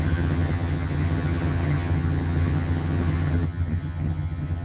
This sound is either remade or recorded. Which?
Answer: remade